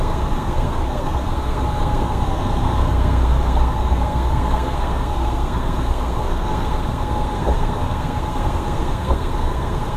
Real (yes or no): no